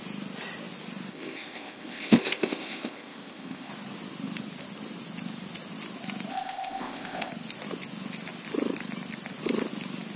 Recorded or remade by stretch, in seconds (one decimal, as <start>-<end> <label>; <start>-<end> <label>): 0.0-1.1 recorded; 1.1-3.7 remade; 3.7-6.3 recorded; 6.3-7.3 remade; 7.3-10.2 recorded